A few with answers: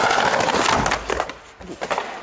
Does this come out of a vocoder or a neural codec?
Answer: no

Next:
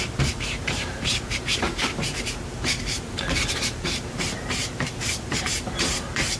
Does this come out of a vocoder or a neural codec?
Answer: yes